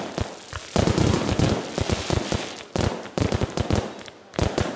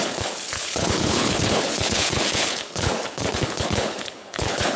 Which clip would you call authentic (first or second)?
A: first